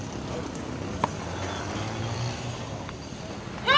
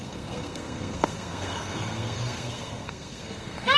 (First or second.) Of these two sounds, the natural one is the first